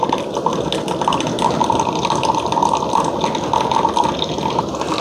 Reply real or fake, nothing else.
real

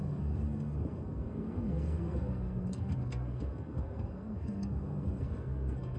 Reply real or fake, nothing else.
fake